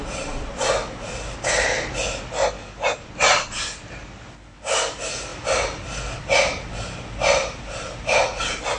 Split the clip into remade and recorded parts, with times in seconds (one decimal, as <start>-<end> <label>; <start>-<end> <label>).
0.0-7.4 recorded; 7.4-8.3 remade; 8.3-8.8 recorded